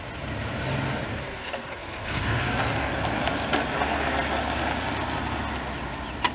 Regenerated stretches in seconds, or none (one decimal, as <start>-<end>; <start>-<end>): 1.1-2.6